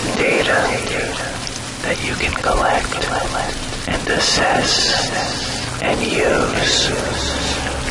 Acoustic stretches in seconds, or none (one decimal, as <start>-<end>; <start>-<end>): 0.8-7.9